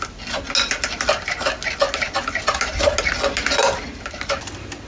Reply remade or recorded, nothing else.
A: recorded